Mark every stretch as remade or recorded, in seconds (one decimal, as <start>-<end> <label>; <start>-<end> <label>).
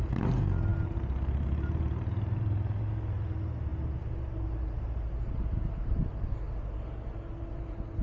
0.0-0.7 recorded; 0.7-2.9 remade; 2.9-3.7 recorded; 3.7-6.5 remade; 6.5-8.0 recorded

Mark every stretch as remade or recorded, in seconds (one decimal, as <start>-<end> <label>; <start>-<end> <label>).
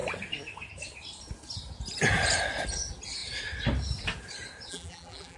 0.0-4.7 recorded; 4.7-5.4 remade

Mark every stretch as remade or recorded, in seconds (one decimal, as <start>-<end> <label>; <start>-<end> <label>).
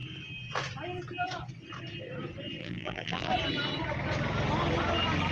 0.0-2.6 recorded; 2.6-3.3 remade; 3.3-5.3 recorded